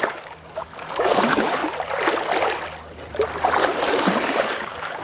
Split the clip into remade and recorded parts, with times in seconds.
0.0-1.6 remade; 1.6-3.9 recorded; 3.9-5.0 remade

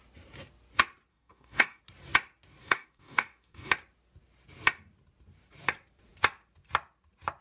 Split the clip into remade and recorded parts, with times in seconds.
0.0-1.1 recorded; 1.1-1.8 remade; 1.8-2.6 recorded; 2.6-3.7 remade; 3.7-7.4 recorded

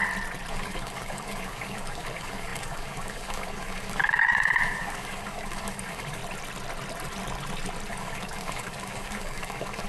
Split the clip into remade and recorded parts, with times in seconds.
0.0-0.5 recorded; 0.5-6.2 remade; 6.2-7.9 recorded; 7.9-9.9 remade

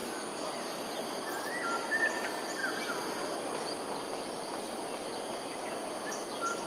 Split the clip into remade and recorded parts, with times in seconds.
0.0-0.6 remade; 0.6-6.7 recorded

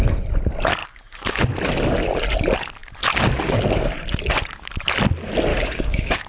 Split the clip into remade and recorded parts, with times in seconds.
0.0-0.8 recorded; 0.8-1.4 remade; 1.4-5.5 recorded; 5.5-6.3 remade